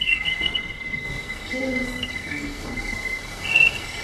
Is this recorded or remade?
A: remade